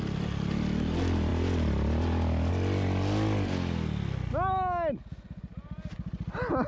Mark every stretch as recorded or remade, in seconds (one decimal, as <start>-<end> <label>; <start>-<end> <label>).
0.0-6.7 recorded